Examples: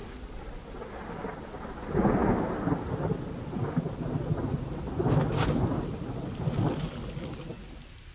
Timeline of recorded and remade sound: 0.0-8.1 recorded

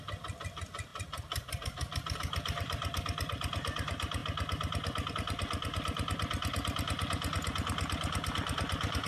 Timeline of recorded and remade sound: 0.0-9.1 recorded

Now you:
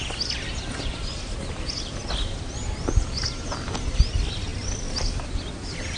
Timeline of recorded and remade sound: 0.0-6.0 recorded

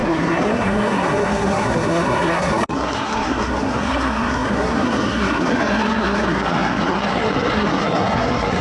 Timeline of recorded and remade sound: 0.0-8.6 remade

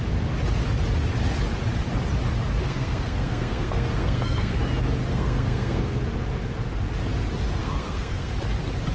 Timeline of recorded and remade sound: 0.0-2.6 recorded; 2.6-4.6 remade; 4.6-5.1 recorded; 5.1-6.0 remade; 6.0-7.6 recorded; 7.6-8.3 remade; 8.3-8.9 recorded

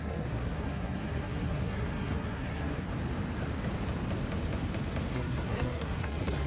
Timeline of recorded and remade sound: 0.0-2.9 remade; 2.9-5.1 recorded; 5.1-6.5 remade